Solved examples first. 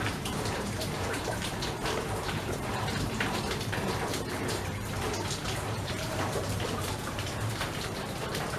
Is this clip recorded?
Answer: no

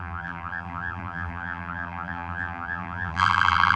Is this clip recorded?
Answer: no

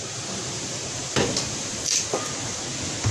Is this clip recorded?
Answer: yes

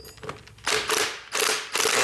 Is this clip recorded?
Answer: yes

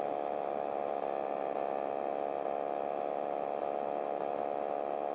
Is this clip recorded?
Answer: yes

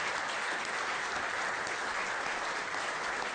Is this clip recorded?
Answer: yes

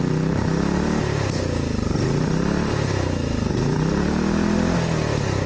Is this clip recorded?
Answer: yes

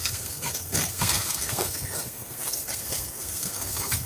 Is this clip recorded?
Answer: no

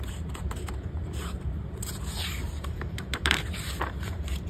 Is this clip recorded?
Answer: no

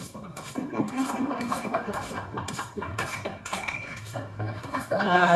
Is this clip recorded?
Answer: no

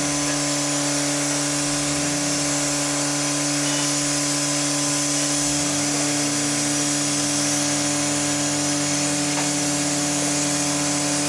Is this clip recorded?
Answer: yes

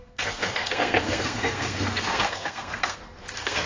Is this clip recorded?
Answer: no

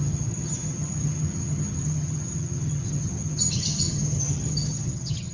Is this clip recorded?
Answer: no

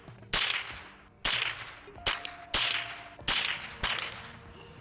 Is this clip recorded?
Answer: yes